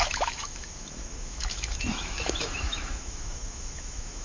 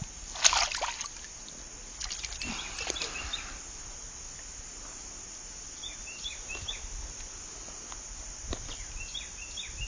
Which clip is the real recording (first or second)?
second